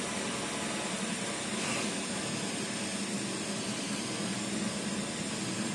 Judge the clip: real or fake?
real